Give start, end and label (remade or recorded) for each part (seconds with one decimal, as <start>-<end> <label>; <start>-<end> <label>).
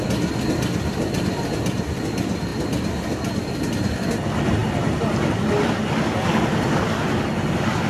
0.0-7.9 recorded